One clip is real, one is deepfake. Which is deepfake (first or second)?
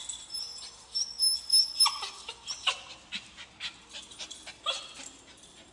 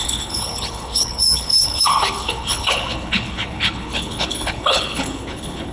second